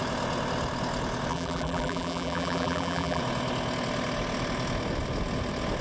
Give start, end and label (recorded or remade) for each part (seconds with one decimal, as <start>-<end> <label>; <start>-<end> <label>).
0.0-1.3 recorded; 1.3-3.2 remade; 3.2-5.8 recorded